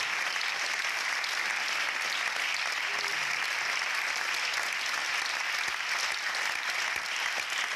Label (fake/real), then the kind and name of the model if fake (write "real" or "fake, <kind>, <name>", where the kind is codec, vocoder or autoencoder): real